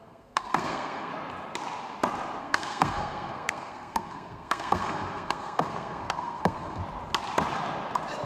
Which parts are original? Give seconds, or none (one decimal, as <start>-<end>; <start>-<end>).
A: 1.1-2.4; 6.8-8.3